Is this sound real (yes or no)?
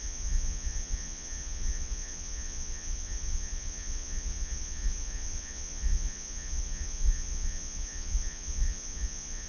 no